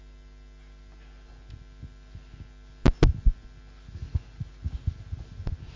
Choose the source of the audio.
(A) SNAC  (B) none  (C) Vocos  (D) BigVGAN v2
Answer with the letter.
B